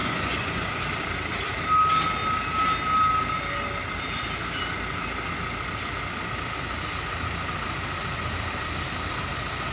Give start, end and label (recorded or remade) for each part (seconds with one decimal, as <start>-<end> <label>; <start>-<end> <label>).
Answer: 0.0-0.8 remade; 0.8-9.7 recorded

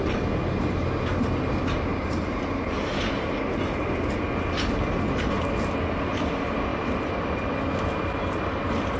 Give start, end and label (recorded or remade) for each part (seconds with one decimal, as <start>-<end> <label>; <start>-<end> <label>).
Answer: 0.0-1.9 recorded; 1.9-2.4 remade; 2.4-6.7 recorded; 6.7-7.3 remade; 7.3-9.0 recorded

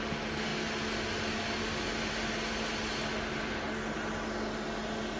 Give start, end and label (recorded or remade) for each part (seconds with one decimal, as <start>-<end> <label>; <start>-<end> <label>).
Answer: 0.0-5.2 recorded